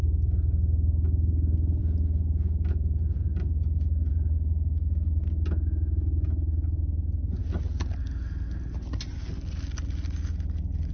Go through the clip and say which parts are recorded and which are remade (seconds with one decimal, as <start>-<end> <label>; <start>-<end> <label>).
0.0-10.9 recorded